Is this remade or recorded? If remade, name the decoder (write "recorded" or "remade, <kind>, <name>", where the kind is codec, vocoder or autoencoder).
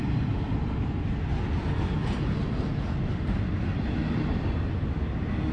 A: recorded